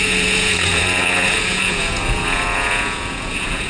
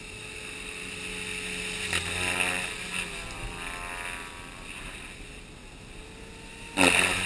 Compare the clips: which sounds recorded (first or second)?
second